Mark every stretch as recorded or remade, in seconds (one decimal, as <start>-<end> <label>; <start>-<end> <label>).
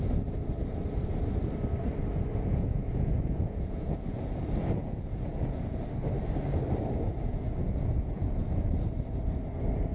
0.0-2.3 recorded; 2.3-5.8 remade; 5.8-7.3 recorded; 7.3-8.7 remade; 8.7-9.9 recorded